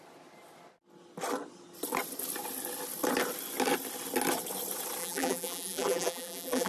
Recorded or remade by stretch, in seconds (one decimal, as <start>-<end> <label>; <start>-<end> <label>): 0.0-5.0 recorded; 5.0-6.7 remade